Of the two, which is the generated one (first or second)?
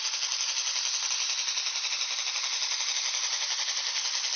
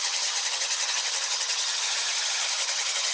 second